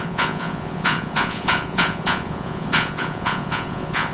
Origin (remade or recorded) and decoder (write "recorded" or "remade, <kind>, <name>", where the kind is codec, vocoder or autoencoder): remade, vocoder, Vocos